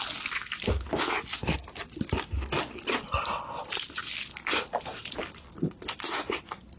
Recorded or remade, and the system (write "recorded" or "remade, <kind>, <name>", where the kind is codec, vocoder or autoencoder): recorded